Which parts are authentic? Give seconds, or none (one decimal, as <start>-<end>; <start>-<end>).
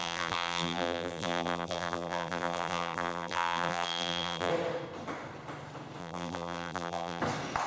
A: 4.5-6.0; 7.2-7.7